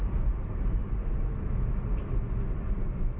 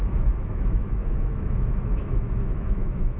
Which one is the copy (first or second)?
second